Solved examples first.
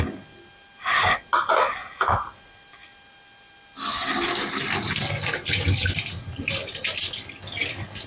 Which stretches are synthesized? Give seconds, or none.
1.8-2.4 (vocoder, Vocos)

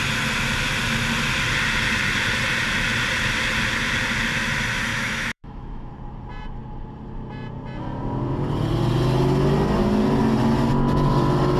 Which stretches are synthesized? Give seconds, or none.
4.9-5.9 (autoencoder, DAC-VAE)

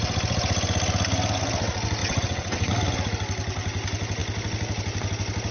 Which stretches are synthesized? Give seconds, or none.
2.0-2.7 (vocoder, WaveNeXt)

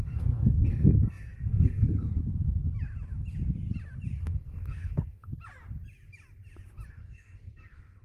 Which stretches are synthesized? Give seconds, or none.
0.0-2.2 (codec, SNAC); 4.2-5.3; 6.9-8.0

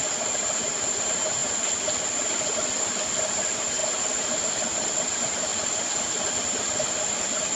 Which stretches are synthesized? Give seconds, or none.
5.5-6.4 (vocoder, BigVGAN v2)

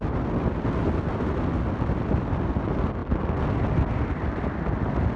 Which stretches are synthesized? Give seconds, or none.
0.0-3.0 (vocoder, BigVGAN v2); 3.9-5.2